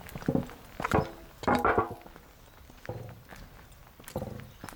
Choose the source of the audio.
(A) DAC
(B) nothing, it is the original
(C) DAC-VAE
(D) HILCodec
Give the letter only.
B